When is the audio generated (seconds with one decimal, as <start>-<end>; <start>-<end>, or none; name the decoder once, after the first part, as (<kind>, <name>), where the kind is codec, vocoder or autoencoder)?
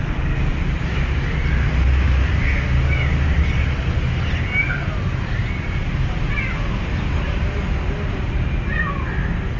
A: none